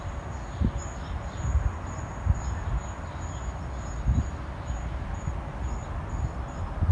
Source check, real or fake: real